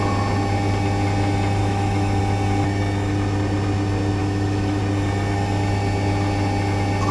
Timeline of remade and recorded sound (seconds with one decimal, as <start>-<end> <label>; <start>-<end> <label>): 0.0-1.6 recorded; 1.6-2.2 remade; 2.2-4.2 recorded; 4.2-4.8 remade; 4.8-7.1 recorded